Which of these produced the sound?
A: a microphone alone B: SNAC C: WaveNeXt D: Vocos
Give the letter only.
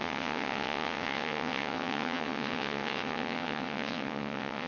C